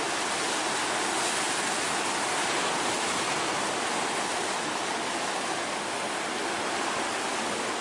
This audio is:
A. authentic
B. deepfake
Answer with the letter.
A